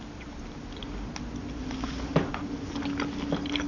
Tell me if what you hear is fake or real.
real